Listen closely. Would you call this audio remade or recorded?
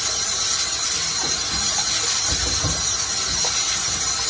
recorded